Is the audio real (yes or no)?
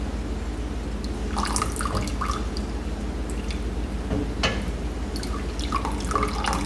yes